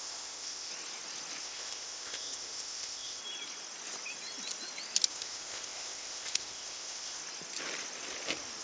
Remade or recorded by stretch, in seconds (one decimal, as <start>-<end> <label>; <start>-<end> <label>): 0.0-0.7 remade; 0.7-1.4 recorded; 1.4-3.2 remade; 3.2-5.1 recorded; 5.1-7.2 remade; 7.2-8.6 recorded